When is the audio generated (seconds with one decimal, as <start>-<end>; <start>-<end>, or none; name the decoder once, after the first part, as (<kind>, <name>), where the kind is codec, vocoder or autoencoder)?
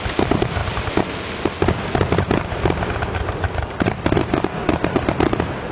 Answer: none